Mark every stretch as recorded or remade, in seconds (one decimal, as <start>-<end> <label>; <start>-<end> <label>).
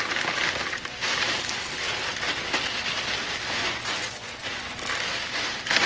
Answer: 0.0-3.6 recorded; 3.6-4.8 remade; 4.8-5.9 recorded